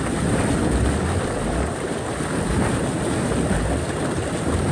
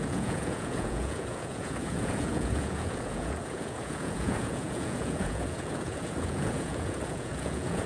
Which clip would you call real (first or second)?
first